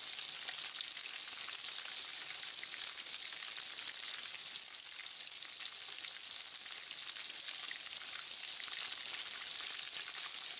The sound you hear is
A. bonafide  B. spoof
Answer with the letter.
A